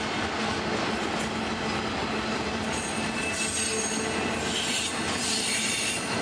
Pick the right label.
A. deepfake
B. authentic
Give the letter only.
B